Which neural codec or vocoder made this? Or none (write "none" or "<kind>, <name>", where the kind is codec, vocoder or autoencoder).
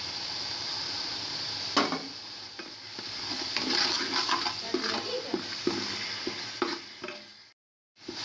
none